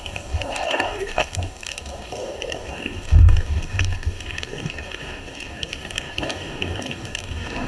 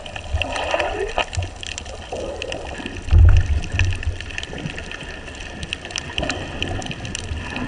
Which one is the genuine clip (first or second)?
second